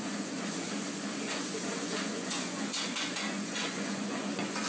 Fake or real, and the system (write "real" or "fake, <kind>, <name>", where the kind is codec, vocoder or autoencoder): fake, vocoder, Vocos